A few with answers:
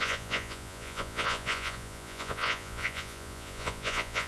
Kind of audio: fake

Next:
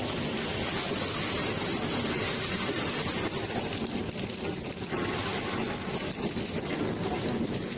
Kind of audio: real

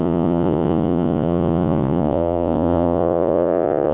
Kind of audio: fake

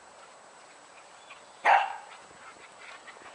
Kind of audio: fake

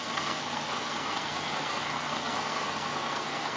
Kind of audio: fake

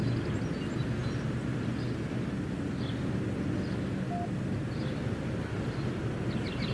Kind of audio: real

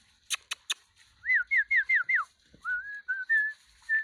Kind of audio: real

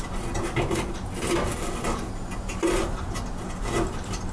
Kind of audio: real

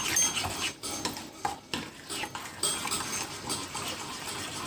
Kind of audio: real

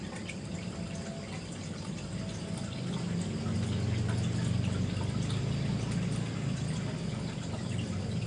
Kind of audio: real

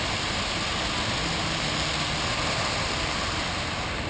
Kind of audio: real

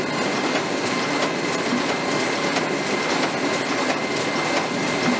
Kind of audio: real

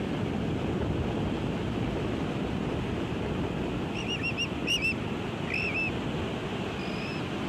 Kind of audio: real